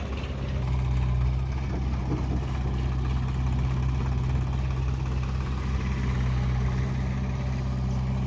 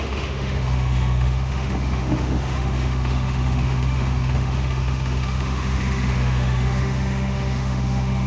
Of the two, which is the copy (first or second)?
second